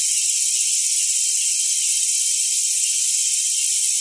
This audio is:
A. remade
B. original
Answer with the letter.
B